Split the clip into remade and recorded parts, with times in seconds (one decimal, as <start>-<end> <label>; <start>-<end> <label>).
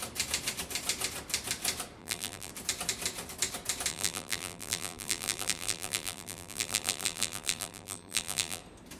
0.0-2.0 recorded; 2.0-2.5 remade; 2.5-3.9 recorded; 3.9-8.6 remade; 8.6-9.0 recorded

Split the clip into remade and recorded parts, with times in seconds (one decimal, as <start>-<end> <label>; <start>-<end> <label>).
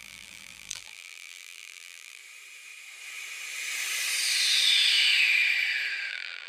0.0-2.2 remade; 2.2-6.1 recorded; 6.1-6.5 remade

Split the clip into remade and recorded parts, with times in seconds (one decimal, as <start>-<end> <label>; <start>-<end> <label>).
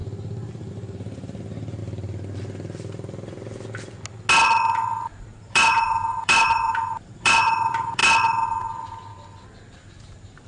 0.0-0.7 recorded; 0.7-1.8 remade; 1.8-5.2 recorded; 5.2-8.0 remade; 8.0-10.0 recorded; 10.0-10.5 remade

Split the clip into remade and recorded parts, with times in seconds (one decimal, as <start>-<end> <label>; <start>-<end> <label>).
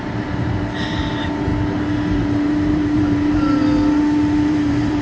0.0-1.5 remade; 1.5-2.1 recorded; 2.1-3.6 remade; 3.6-4.4 recorded; 4.4-5.0 remade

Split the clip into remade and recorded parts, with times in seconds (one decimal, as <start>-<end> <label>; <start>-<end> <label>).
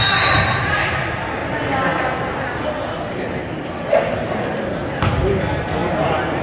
0.0-1.4 remade; 1.4-5.2 recorded; 5.2-6.4 remade